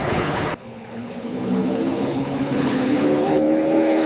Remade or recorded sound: remade